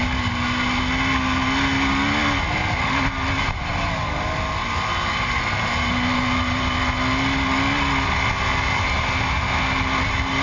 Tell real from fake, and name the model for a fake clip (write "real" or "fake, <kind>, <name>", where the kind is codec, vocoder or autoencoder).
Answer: real